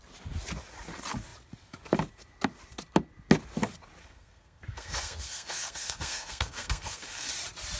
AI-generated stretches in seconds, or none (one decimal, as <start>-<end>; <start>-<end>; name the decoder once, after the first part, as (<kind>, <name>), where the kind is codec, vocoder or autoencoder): 4.0-7.3 (codec, SNAC)